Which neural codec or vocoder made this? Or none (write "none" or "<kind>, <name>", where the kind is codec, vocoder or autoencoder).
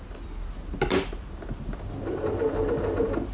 none